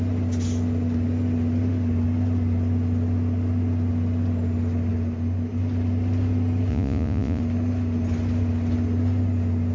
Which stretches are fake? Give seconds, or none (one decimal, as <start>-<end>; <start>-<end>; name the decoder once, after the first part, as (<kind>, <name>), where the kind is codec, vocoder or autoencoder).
6.7-7.4 (vocoder, Vocos)